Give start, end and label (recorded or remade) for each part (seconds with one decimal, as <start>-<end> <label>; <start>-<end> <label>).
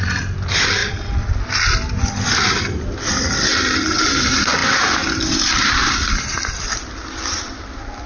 0.0-8.1 recorded